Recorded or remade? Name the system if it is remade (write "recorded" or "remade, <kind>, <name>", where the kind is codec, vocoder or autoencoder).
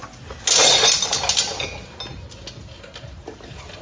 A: recorded